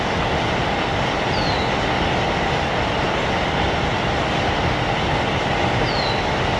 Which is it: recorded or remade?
recorded